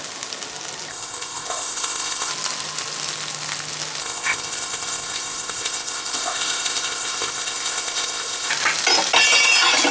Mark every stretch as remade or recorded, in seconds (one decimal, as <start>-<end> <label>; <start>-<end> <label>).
0.0-0.9 recorded; 0.9-2.3 remade; 2.3-4.0 recorded; 4.0-8.5 remade; 8.5-9.9 recorded